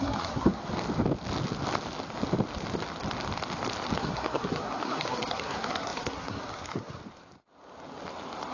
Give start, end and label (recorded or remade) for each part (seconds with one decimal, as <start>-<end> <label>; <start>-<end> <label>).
0.0-0.6 remade; 0.6-4.0 recorded; 4.0-7.0 remade; 7.0-8.5 recorded